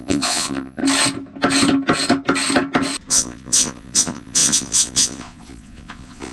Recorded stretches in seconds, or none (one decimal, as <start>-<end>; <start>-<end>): 0.8-3.1